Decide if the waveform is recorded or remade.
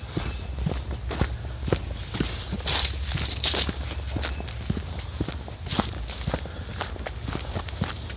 recorded